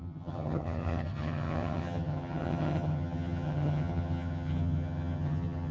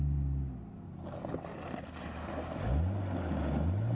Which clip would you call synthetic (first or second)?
first